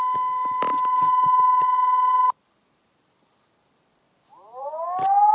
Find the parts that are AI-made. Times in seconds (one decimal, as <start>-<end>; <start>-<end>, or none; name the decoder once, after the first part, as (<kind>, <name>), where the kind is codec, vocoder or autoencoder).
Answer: none